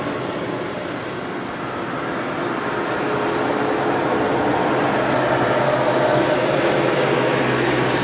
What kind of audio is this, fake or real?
real